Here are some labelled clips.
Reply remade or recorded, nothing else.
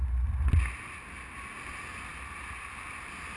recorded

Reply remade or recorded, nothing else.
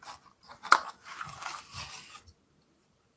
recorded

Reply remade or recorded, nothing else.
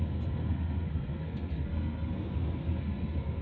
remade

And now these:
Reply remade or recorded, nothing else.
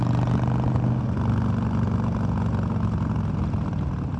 recorded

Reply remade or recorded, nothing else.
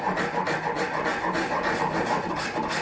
recorded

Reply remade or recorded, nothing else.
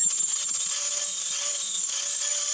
remade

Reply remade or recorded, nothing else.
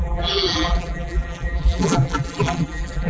remade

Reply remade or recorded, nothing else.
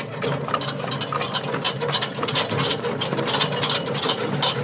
recorded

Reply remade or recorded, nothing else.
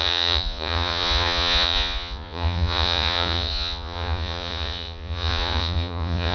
remade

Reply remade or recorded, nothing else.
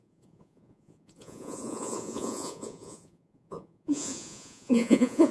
remade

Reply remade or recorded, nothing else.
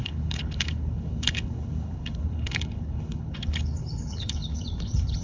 remade